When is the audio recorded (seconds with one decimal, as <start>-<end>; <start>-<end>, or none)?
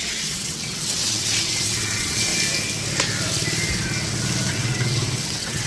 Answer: 2.3-4.5